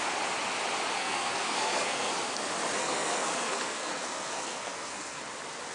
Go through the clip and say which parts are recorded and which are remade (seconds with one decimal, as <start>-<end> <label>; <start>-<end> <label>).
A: 0.0-1.0 recorded; 1.0-2.1 remade; 2.1-2.8 recorded; 2.8-5.2 remade; 5.2-5.7 recorded